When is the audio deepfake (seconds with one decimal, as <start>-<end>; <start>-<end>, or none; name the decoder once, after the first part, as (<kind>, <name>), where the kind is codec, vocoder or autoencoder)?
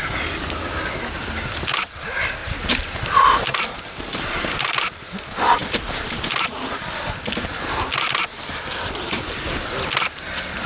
2.4-4.7 (vocoder, BigVGAN v2)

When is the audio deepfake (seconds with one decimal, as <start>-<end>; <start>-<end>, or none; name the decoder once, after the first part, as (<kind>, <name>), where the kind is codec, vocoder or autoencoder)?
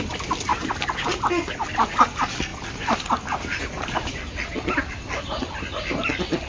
none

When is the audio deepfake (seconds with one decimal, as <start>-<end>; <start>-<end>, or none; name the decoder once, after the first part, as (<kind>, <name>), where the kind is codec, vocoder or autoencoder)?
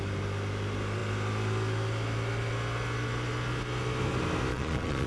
4.5-5.1 (vocoder, Vocos)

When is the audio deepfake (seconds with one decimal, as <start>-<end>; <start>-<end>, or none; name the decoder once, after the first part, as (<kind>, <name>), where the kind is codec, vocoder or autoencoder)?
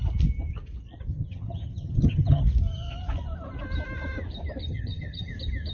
1.1-2.4 (vocoder, HiFi-GAN); 4.7-5.3